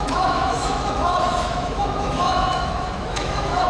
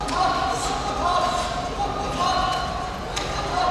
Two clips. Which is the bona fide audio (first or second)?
second